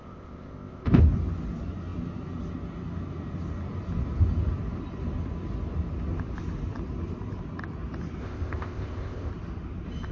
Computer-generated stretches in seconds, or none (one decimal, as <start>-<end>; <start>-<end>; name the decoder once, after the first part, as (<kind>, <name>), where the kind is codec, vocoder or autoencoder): 0.0-1.0 (codec, ZipCodec); 8.2-9.3